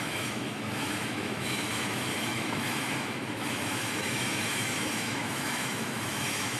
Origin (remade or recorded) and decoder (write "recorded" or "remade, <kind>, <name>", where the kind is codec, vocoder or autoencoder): remade, autoencoder, DAC-VAE